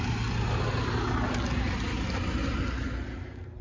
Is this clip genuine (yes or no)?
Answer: yes